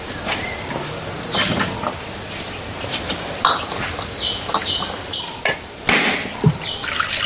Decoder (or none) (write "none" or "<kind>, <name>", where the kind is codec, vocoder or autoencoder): none